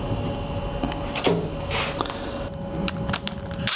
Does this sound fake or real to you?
real